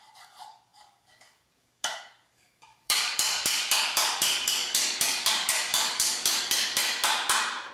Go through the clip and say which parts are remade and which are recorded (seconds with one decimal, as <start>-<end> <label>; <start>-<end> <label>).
0.0-6.8 remade; 6.8-7.7 recorded